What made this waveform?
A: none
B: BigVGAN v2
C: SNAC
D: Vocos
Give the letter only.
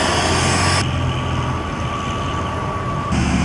A